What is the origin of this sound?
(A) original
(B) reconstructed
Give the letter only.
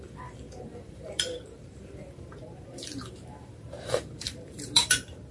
B